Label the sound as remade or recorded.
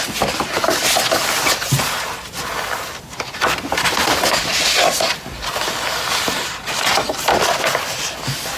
recorded